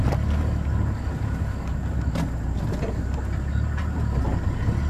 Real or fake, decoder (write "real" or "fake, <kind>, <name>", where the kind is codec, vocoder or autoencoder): real